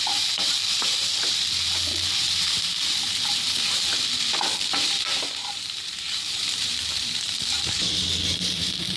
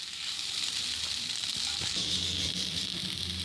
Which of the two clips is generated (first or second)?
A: first